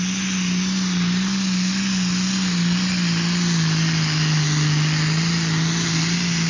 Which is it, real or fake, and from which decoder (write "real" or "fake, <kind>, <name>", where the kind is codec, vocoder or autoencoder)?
real